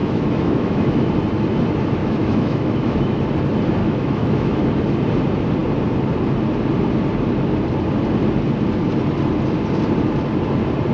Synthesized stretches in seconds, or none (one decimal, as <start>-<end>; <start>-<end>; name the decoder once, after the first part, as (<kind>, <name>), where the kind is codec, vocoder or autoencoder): 0.0-1.1 (autoencoder, DAC-VAE); 2.0-3.2; 3.8-4.7